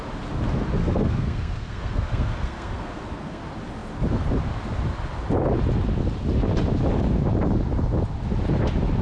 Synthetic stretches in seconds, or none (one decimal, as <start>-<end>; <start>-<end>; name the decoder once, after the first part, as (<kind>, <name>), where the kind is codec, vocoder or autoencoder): 0.8-3.4 (codec, SNAC)